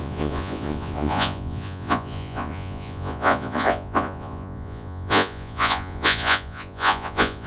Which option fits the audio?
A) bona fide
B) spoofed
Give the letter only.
B